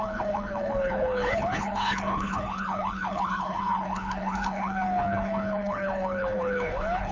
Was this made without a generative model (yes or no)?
no